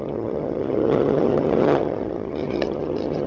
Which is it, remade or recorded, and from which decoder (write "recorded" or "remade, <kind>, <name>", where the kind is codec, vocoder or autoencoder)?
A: remade, vocoder, HiFi-GAN